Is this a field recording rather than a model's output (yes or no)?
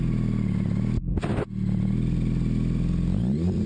yes